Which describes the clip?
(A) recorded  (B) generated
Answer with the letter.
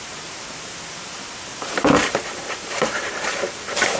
B